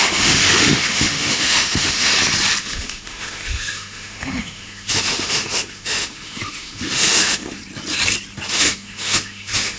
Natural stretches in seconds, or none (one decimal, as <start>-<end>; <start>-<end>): 2.1-2.6; 7.6-8.5